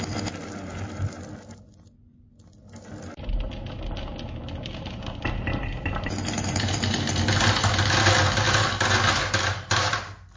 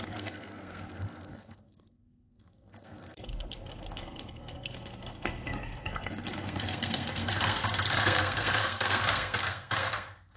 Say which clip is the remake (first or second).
second